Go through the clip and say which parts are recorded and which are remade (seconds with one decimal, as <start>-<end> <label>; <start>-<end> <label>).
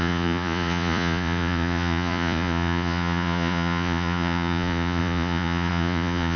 0.0-6.4 remade